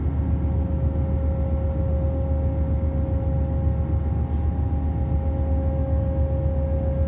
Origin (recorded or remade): recorded